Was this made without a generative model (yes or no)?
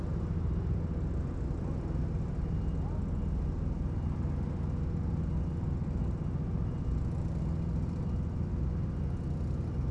yes